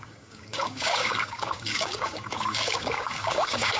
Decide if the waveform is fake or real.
fake